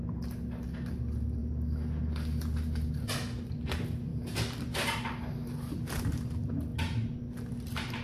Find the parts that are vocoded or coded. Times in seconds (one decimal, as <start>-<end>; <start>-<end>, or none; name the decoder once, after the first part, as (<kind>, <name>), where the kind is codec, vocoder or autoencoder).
none